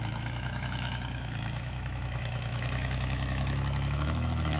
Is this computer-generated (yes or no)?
yes